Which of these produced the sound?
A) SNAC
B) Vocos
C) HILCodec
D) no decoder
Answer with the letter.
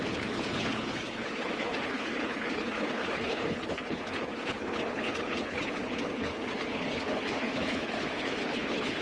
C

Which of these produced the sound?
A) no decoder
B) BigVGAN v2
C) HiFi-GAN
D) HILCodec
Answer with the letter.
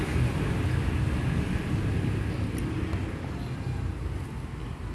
A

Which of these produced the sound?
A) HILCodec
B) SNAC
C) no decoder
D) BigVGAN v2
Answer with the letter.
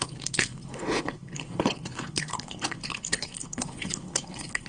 A